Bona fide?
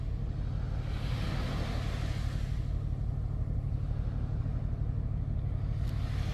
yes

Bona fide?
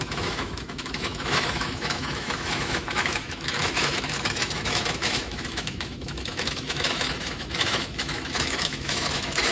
no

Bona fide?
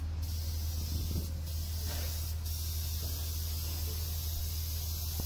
yes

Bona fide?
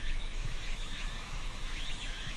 no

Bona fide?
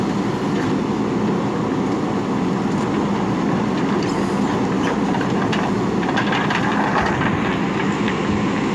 yes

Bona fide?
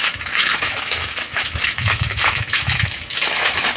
no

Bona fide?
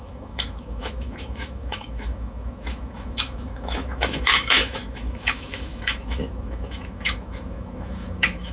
no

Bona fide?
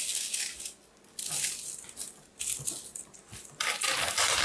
yes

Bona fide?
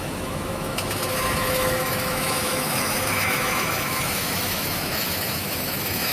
no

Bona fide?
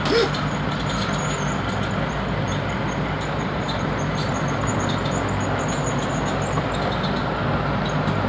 yes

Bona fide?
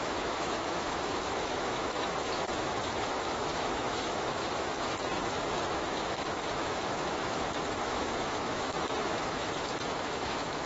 no